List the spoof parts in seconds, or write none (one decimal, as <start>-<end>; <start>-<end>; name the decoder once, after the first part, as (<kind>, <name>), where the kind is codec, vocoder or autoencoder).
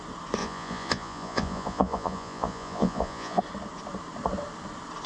0.4-3.4 (vocoder, Vocos)